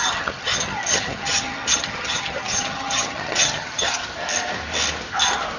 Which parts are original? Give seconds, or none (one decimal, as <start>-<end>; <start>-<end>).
4.0-5.6